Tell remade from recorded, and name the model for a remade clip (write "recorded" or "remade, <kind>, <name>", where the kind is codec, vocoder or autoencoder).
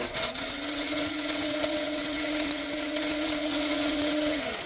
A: remade, vocoder, WaveNeXt